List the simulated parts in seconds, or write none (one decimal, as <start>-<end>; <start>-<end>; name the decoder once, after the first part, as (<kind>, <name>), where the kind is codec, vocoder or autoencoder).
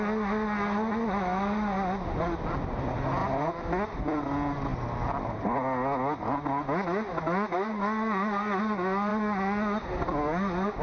none